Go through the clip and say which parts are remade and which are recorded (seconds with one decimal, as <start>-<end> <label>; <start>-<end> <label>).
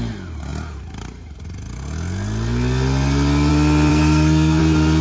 0.0-3.9 recorded; 3.9-4.6 remade; 4.6-5.0 recorded